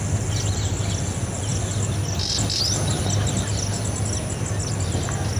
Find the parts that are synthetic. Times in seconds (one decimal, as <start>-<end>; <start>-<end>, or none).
1.5-3.1